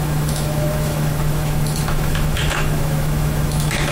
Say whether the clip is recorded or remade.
remade